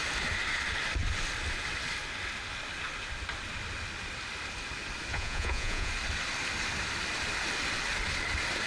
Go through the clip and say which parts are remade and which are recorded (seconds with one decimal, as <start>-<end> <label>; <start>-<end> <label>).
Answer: 0.0-5.1 recorded; 5.1-5.9 remade; 5.9-8.7 recorded